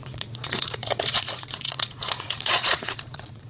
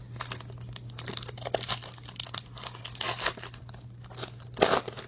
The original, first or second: second